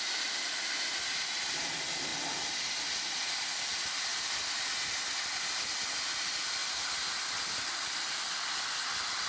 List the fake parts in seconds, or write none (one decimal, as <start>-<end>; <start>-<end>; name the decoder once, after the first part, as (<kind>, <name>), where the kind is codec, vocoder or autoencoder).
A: 4.1-4.6 (vocoder, BigVGAN v2)